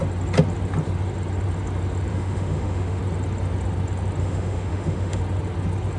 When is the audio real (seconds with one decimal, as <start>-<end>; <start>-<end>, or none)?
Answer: 0.0-2.1; 3.0-4.2; 5.2-6.0